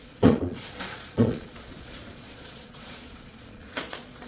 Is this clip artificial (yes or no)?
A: yes